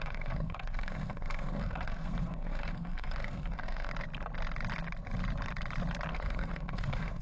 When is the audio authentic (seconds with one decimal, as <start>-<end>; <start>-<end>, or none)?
3.9-6.1